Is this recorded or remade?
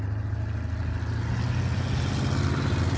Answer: recorded